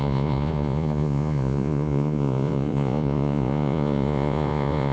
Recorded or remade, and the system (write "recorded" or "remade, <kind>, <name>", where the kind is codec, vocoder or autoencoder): remade, vocoder, Vocos